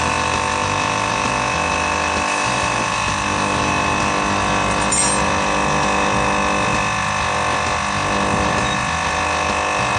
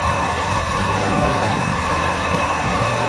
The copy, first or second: second